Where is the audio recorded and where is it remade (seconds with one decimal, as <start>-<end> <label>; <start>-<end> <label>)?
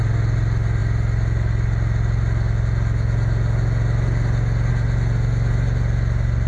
0.0-6.5 recorded